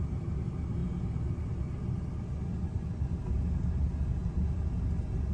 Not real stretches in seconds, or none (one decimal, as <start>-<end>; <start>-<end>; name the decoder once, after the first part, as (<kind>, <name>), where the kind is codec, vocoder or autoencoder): 0.0-0.8 (vocoder, BigVGAN v2); 1.4-5.3